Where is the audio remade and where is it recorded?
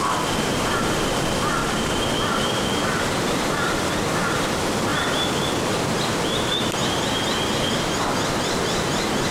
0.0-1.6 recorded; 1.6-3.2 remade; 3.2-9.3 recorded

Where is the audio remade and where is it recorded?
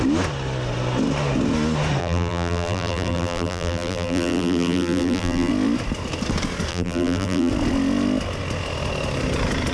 0.0-2.0 recorded; 2.0-5.5 remade; 5.5-6.7 recorded; 6.7-7.5 remade; 7.5-9.7 recorded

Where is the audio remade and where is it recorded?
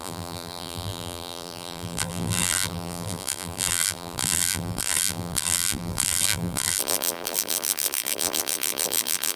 0.0-9.4 remade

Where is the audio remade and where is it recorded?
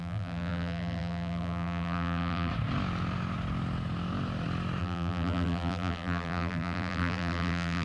0.0-2.5 remade; 2.5-4.8 recorded; 4.8-7.8 remade